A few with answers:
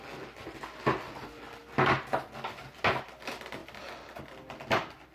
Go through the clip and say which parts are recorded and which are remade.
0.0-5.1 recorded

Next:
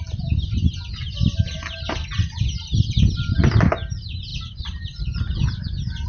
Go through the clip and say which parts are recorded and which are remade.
0.0-6.1 recorded

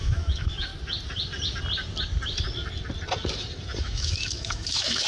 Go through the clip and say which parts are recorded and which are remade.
0.0-0.7 remade; 0.7-3.8 recorded; 3.8-5.1 remade

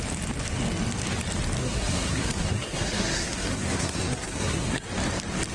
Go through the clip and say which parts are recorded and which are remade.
0.0-1.6 recorded; 1.6-4.9 remade; 4.9-5.5 recorded

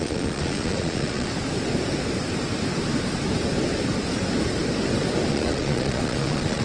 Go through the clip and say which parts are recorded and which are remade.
0.0-1.3 remade; 1.3-5.3 recorded; 5.3-6.6 remade

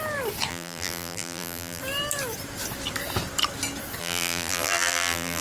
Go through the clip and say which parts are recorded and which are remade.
0.0-0.5 recorded; 0.5-1.8 remade; 1.8-4.0 recorded; 4.0-5.4 remade

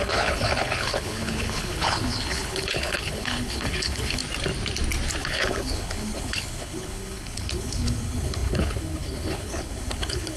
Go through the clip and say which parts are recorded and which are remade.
0.0-4.2 remade; 4.2-5.2 recorded; 5.2-10.4 remade